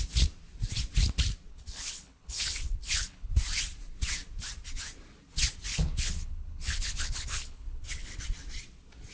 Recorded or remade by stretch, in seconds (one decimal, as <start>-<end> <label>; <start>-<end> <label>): 0.0-1.5 recorded; 1.5-3.3 remade; 3.3-5.7 recorded; 5.7-8.2 remade; 8.2-9.1 recorded